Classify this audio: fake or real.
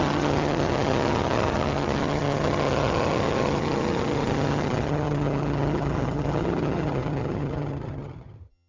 fake